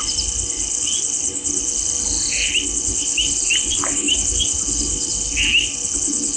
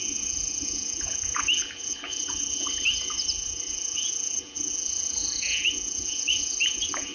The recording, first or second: first